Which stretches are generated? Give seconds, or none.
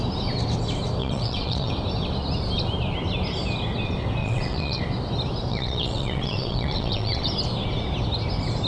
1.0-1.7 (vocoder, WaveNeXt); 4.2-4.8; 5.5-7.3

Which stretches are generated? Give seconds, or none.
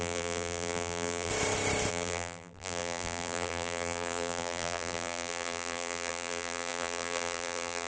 0.0-1.3 (vocoder, BigVGAN v2); 1.9-7.9